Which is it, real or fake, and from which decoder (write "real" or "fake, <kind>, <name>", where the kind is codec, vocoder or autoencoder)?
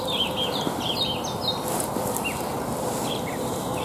real